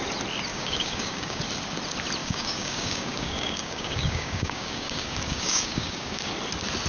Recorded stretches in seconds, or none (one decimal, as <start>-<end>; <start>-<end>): 0.0-0.5; 1.4-2.2; 6.3-6.9